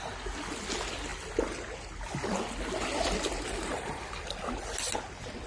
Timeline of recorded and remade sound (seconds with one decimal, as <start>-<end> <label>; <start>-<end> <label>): 0.0-5.5 recorded